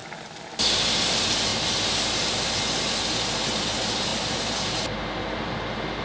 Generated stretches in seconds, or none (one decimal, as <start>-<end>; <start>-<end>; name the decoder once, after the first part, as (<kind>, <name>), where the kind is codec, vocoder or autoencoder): none